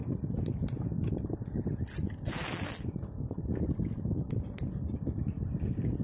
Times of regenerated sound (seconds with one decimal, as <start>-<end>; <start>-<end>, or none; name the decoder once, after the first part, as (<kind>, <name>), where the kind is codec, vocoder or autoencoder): none